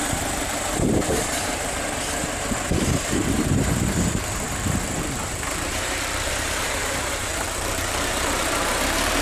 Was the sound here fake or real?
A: fake